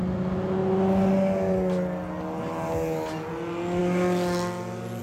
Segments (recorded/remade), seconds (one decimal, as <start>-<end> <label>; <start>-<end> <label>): 0.0-5.0 recorded

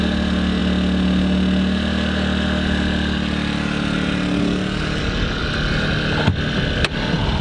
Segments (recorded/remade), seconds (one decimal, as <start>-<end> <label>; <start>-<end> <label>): 0.0-7.4 recorded

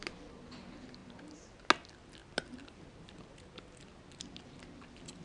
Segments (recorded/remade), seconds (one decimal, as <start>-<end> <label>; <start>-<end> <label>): 0.0-5.2 recorded

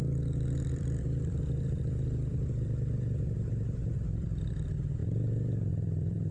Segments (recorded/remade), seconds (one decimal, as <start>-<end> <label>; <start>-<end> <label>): 0.0-6.3 remade

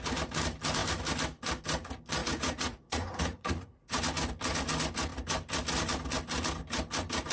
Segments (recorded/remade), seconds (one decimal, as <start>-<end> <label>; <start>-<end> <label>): 0.0-2.2 recorded; 2.2-4.0 remade; 4.0-7.3 recorded

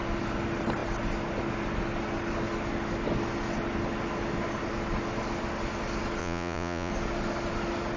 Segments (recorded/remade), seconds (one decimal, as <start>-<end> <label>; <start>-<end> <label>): 0.0-6.2 recorded; 6.2-6.9 remade; 6.9-8.0 recorded